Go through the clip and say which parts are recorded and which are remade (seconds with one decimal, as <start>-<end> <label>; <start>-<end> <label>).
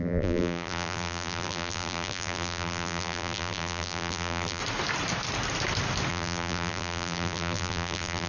0.0-4.6 remade; 4.6-6.1 recorded; 6.1-8.3 remade